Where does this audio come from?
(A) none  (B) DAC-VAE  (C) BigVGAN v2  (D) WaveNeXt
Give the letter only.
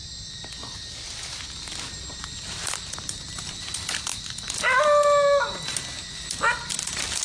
A